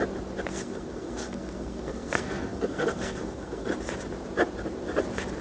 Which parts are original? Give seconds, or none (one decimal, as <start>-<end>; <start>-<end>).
0.0-0.5; 3.7-5.4